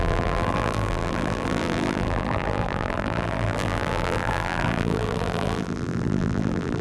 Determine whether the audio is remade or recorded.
remade